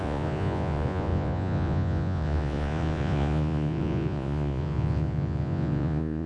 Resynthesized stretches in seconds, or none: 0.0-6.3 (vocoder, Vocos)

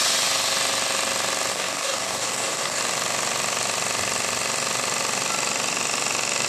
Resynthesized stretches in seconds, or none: 1.5-2.8 (codec, DAC)

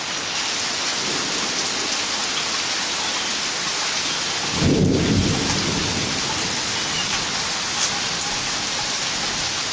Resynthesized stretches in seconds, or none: none

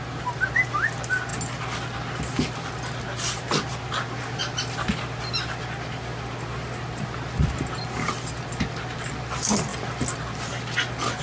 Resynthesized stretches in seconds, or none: none

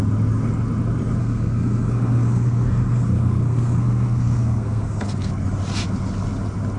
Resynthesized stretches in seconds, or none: 1.2-5.3 (codec, SNAC)